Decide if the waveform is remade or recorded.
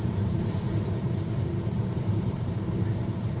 remade